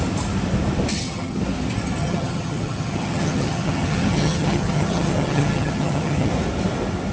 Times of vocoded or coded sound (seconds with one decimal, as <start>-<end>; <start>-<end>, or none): 0.9-1.4; 2.0-6.3